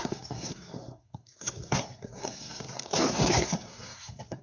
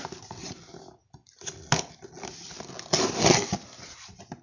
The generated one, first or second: first